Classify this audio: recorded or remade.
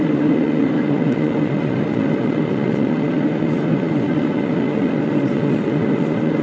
remade